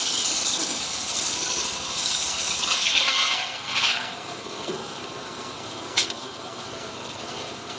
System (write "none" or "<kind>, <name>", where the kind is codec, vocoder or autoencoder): codec, SNAC